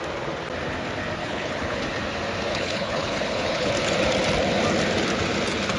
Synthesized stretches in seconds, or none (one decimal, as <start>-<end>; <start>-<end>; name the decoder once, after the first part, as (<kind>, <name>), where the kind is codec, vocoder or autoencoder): 1.2-1.8 (codec, HILCodec); 2.5-3.7